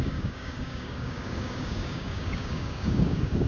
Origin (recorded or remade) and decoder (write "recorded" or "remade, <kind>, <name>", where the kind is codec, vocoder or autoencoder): remade, codec, DAC